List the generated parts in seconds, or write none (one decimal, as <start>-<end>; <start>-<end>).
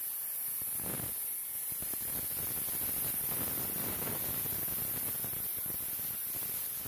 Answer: none